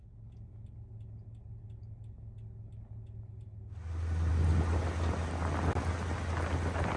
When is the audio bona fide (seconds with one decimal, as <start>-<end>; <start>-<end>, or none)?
0.0-7.0

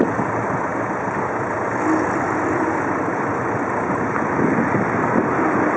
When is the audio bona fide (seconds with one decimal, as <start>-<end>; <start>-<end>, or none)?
0.0-5.8

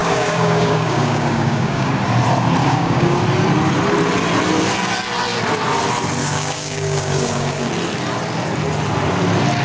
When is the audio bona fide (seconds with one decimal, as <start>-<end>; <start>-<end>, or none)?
1.9-2.6; 3.2-6.2; 7.7-9.6

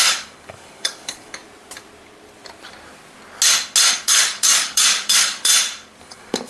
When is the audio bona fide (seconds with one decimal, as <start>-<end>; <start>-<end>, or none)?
1.4-3.9; 5.5-6.0

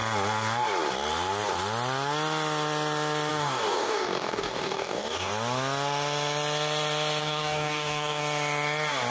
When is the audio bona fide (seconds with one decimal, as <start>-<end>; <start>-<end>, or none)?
0.0-3.3; 5.3-7.2; 8.2-9.1